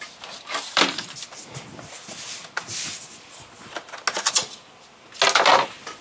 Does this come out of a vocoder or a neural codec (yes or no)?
no